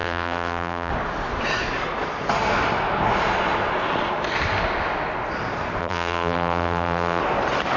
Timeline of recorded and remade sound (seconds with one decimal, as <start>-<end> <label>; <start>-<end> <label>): 0.0-0.9 remade; 0.9-5.8 recorded; 5.8-7.2 remade; 7.2-7.8 recorded

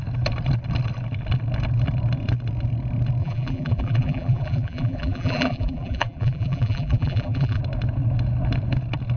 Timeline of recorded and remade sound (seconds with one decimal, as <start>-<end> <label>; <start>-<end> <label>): 0.0-3.2 recorded; 3.2-7.6 remade; 7.6-9.2 recorded

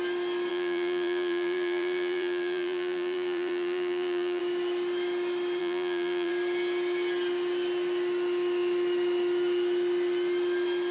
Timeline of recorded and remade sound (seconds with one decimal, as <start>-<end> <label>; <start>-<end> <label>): 0.0-0.5 recorded; 0.5-4.4 remade; 4.4-5.6 recorded; 5.6-6.3 remade; 6.3-10.9 recorded

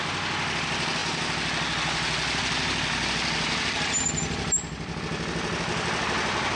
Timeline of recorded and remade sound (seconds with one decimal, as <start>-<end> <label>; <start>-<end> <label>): 0.0-6.6 recorded

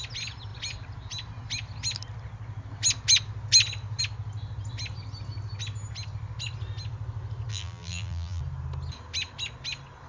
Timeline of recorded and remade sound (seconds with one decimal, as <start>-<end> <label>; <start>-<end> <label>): 0.0-7.5 recorded; 7.5-8.4 remade; 8.4-10.1 recorded

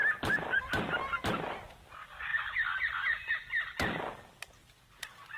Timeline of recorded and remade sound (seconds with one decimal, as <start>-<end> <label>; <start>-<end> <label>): 0.0-0.6 remade; 0.6-1.2 recorded; 1.2-1.7 remade; 1.7-2.3 recorded; 2.3-3.3 remade; 3.3-4.6 recorded; 4.6-5.4 remade

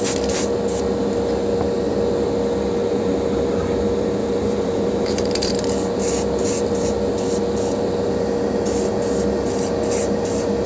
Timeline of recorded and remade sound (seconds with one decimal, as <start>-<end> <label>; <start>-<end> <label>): 0.0-4.2 recorded; 4.2-5.5 remade; 5.5-10.7 recorded